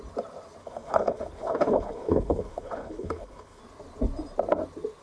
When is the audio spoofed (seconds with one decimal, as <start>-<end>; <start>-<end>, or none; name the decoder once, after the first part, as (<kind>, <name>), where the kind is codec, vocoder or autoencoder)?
0.6-3.6 (codec, HILCodec)